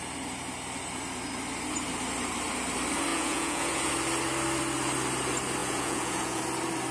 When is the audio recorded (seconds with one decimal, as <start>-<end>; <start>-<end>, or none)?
0.0-3.1; 3.9-5.6; 6.4-6.9

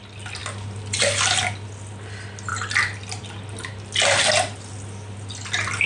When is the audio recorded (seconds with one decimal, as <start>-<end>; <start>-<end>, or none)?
0.0-5.9

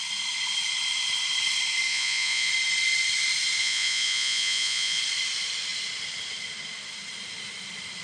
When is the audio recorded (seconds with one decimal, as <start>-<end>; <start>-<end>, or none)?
0.0-1.9; 2.5-3.6; 5.0-8.0

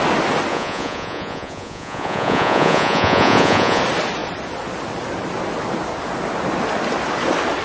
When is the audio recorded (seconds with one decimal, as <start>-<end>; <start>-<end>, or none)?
0.0-0.5; 3.8-7.6

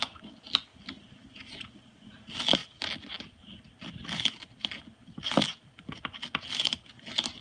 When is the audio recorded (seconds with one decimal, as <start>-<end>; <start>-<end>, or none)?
0.0-7.4

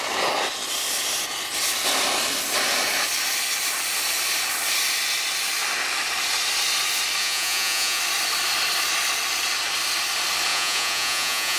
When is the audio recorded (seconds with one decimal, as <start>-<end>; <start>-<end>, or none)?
0.0-7.2; 8.0-10.5